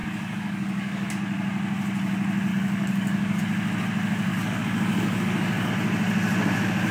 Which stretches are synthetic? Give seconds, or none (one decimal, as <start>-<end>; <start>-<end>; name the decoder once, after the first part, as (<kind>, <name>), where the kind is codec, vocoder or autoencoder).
0.0-1.1 (codec, DAC); 2.5-3.4; 4.3-5.7